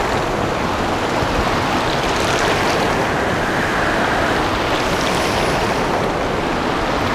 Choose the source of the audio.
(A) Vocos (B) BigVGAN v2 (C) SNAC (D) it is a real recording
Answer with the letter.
D